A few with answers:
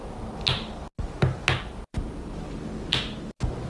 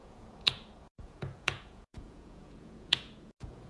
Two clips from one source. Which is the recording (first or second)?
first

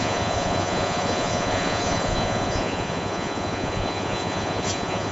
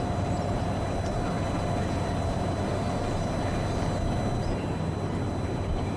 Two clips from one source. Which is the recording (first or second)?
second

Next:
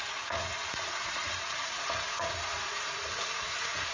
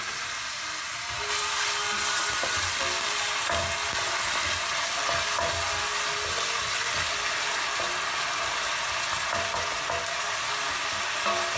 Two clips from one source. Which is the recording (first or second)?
second